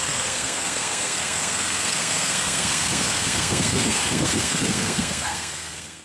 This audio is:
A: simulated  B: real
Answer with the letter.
A